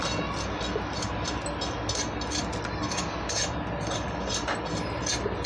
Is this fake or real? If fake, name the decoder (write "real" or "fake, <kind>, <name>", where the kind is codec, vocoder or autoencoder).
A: real